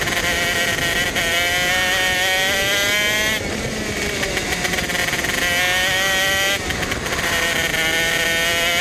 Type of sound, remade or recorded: recorded